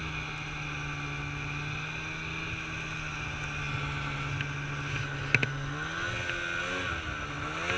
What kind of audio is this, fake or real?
real